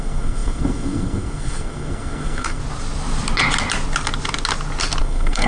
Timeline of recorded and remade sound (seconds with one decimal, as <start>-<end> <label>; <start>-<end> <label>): 0.0-2.6 remade; 2.6-5.0 recorded; 5.0-5.5 remade